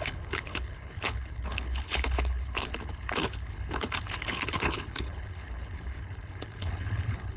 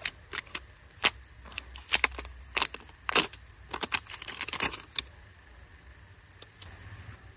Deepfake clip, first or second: first